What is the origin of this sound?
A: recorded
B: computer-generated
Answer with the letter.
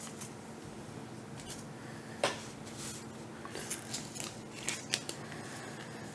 A